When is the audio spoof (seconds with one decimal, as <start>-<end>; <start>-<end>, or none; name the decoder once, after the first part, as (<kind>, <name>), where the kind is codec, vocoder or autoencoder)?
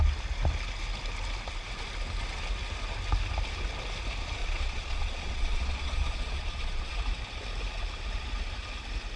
4.4-6.9 (vocoder, Vocos)